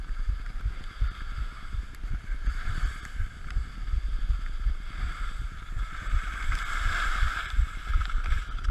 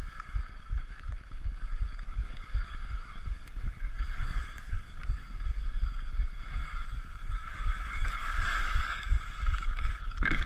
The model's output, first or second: second